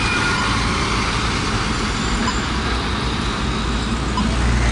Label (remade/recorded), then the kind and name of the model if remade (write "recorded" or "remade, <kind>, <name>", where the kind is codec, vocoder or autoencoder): recorded